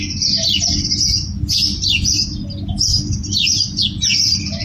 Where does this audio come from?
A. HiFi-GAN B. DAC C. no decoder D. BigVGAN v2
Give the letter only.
C